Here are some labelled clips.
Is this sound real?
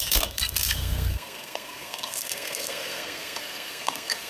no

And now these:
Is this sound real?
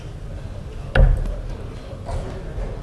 yes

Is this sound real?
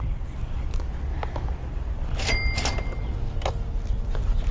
yes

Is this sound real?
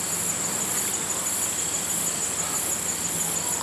yes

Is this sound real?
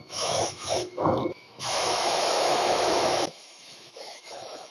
no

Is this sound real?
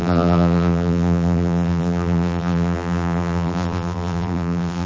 no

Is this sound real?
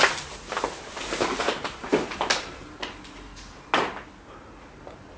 yes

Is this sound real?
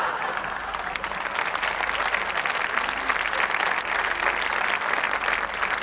yes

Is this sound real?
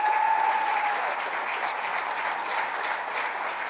yes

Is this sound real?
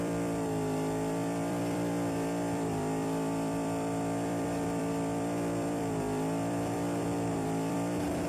no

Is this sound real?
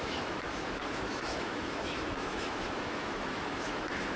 no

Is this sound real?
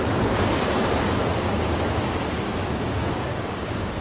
no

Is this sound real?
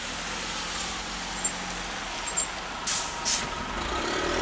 yes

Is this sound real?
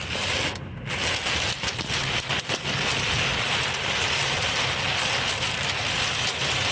yes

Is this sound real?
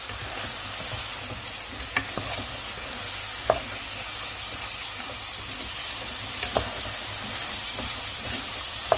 yes